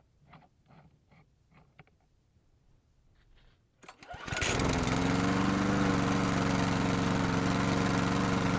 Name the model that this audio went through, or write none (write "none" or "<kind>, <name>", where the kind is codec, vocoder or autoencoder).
none